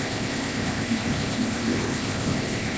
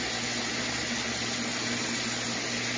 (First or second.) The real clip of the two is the second